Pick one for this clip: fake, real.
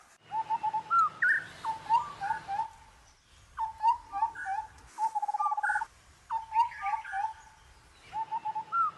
real